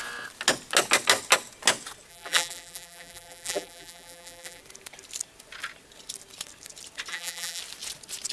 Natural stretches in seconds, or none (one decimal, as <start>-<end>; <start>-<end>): 0.0-2.1; 4.6-7.1; 7.6-8.3